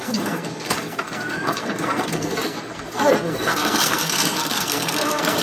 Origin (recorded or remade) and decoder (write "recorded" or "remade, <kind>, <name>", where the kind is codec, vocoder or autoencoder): remade, codec, SNAC